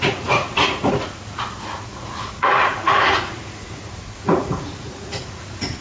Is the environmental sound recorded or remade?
remade